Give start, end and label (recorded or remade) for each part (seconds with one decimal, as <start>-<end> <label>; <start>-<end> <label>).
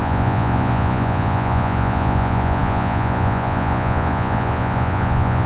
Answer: 0.0-5.5 remade